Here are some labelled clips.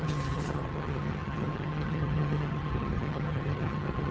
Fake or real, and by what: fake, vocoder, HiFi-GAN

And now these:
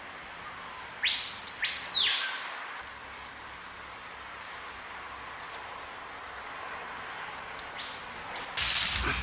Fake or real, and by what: real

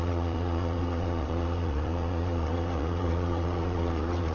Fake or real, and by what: fake, vocoder, Vocos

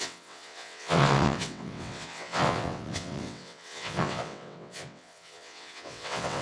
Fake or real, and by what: fake, vocoder, WaveNeXt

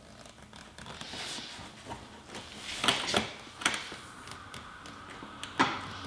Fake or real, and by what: real